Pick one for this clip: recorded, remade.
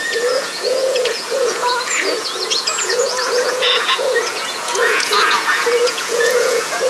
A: remade